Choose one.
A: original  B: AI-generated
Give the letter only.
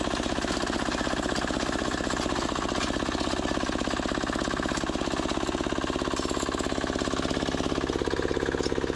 A